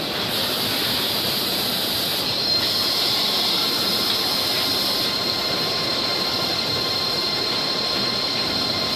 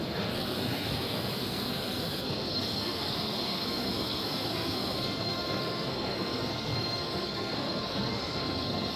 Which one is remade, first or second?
second